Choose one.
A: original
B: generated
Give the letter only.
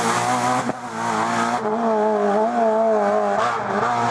A